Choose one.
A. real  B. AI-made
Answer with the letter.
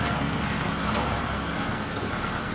B